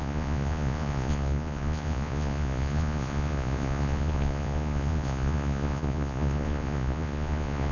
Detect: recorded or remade remade